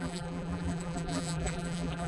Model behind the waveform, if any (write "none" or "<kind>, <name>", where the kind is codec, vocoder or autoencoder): vocoder, BigVGAN v2